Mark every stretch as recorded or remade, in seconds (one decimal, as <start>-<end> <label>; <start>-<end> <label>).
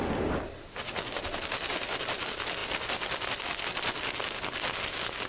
0.0-5.3 recorded